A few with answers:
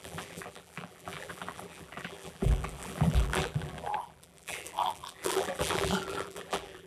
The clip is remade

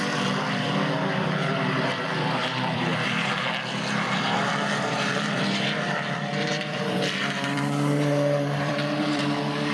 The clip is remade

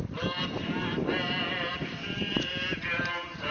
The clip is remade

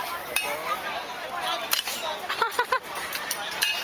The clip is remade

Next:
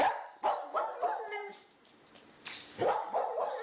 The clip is remade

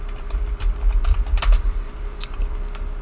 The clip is remade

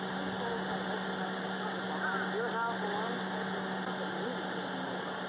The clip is recorded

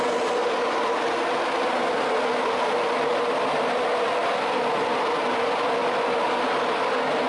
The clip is recorded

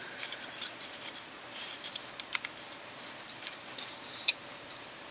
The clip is remade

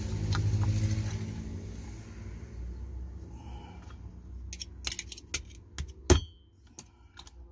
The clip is recorded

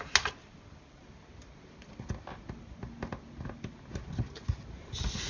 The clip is recorded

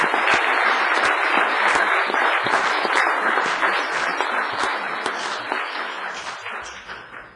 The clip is recorded